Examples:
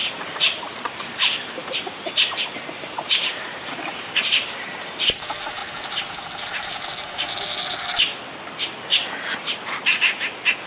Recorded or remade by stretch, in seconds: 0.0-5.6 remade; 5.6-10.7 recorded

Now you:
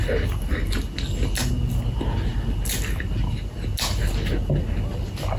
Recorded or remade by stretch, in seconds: 0.0-5.4 recorded

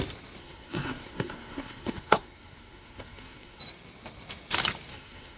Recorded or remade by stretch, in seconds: 0.0-0.4 recorded; 0.4-3.6 remade; 3.6-4.9 recorded; 4.9-5.4 remade

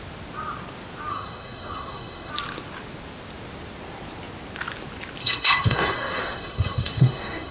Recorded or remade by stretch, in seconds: 0.0-1.1 recorded; 1.1-2.3 remade; 2.3-5.2 recorded; 5.2-7.5 remade

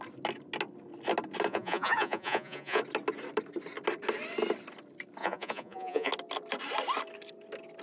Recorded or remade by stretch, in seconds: 0.0-1.5 recorded; 1.5-2.8 remade; 2.8-5.2 recorded; 5.2-6.1 remade; 6.1-7.8 recorded

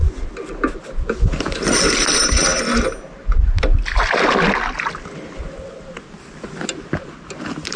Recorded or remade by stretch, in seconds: 0.0-7.8 recorded

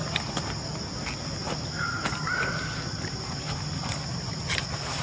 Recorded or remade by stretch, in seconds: 0.0-5.0 recorded